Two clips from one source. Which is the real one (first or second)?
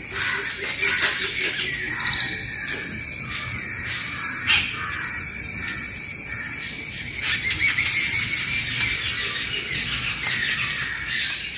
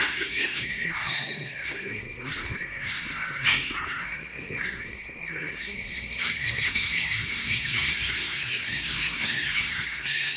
first